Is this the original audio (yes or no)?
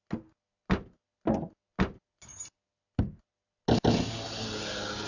yes